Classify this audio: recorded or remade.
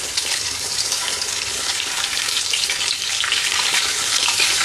remade